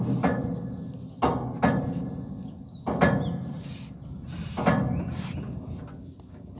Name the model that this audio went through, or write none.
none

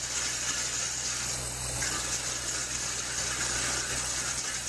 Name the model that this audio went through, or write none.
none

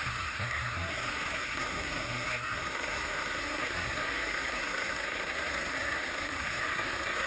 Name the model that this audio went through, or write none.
codec, SNAC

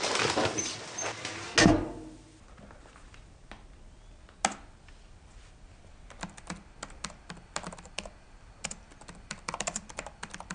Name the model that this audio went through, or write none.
none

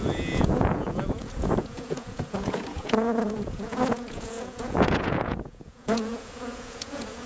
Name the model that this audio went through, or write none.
vocoder, Vocos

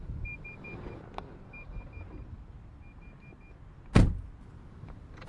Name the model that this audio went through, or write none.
none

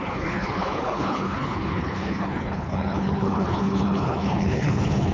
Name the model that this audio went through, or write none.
codec, HILCodec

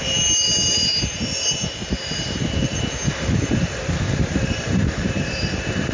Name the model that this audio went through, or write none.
vocoder, BigVGAN v2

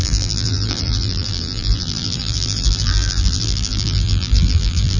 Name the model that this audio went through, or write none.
vocoder, BigVGAN v2